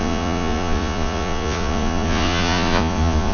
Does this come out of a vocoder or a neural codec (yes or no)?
yes